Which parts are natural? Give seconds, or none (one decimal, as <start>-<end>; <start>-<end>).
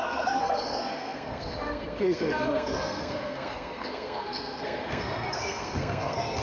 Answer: none